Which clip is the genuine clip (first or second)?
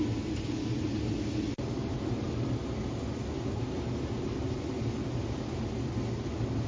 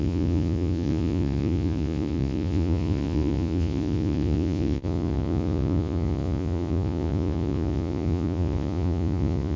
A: first